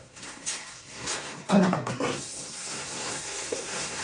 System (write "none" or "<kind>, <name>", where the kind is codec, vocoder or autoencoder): codec, SNAC